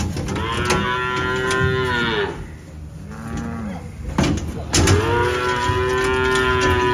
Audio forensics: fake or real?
real